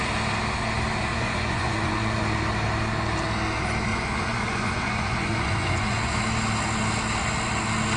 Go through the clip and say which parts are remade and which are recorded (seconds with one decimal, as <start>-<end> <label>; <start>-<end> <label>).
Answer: 0.0-1.1 recorded; 1.1-2.2 remade; 2.2-3.9 recorded; 3.9-6.2 remade; 6.2-8.0 recorded